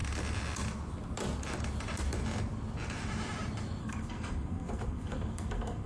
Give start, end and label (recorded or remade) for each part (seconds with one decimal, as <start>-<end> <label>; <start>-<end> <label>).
0.0-3.8 recorded; 3.8-5.9 remade